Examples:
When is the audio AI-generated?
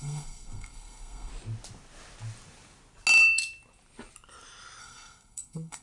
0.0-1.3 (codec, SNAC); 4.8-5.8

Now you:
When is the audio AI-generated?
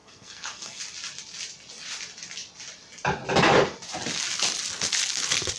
0.0-0.8 (codec, SNAC)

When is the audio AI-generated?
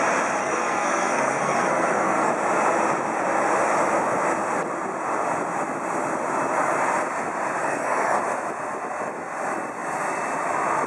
0.4-2.3 (codec, SNAC); 7.6-8.2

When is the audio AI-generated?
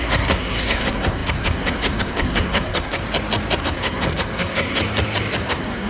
0.0-3.0 (codec, SNAC); 3.6-4.8; 5.4-5.9